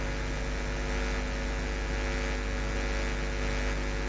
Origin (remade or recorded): recorded